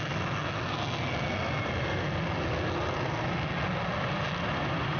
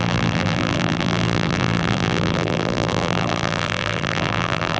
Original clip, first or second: first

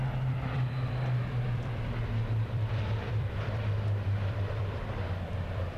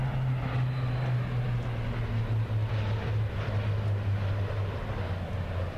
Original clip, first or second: second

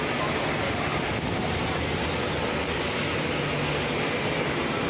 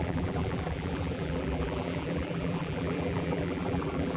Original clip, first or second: first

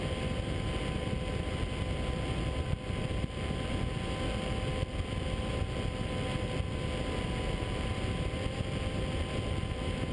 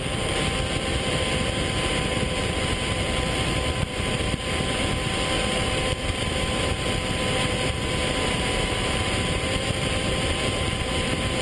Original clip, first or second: first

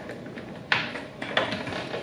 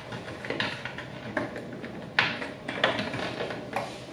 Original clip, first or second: second